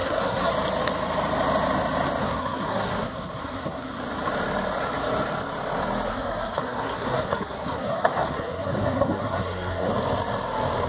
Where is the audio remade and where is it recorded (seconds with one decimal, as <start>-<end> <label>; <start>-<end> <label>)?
0.0-0.5 remade; 0.5-2.2 recorded; 2.2-4.0 remade; 4.0-6.1 recorded; 6.1-9.9 remade; 9.9-10.9 recorded